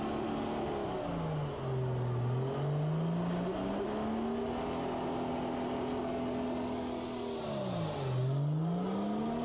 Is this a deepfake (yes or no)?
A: no